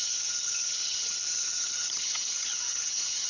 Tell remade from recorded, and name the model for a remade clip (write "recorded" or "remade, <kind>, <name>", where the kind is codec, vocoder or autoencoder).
remade, vocoder, HiFi-GAN